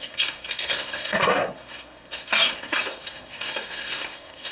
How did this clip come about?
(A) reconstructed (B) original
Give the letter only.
A